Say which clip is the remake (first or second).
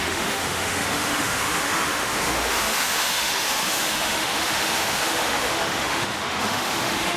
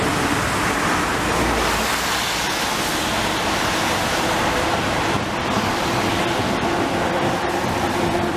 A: first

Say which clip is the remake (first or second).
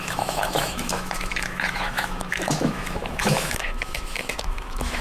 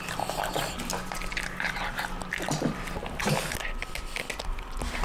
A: first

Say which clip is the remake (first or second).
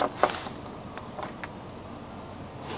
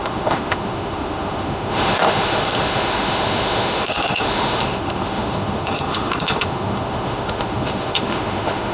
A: second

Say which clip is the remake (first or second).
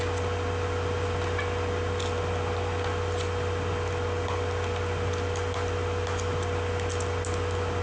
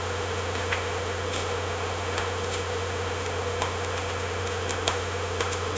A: second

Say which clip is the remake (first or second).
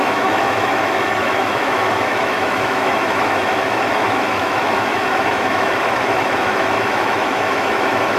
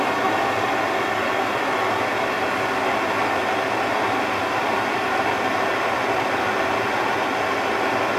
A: first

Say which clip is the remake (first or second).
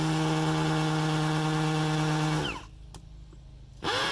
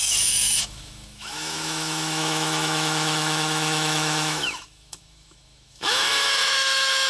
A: second